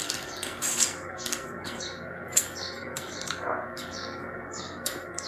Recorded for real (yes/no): no